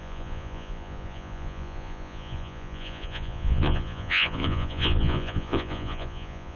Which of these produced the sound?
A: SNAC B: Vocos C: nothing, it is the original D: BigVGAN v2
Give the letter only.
B